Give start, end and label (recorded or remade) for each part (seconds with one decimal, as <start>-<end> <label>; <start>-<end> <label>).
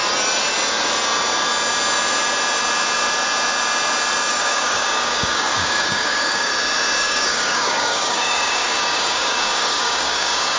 0.0-4.3 recorded; 4.3-6.5 remade; 6.5-7.0 recorded; 7.0-10.6 remade